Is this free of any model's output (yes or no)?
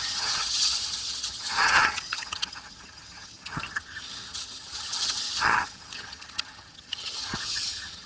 no